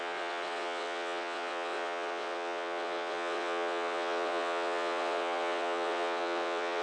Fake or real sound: fake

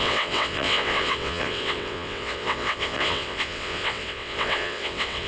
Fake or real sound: fake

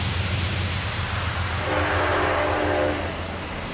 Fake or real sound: real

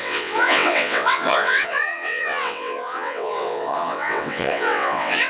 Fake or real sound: fake